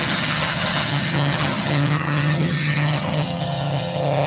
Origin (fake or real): fake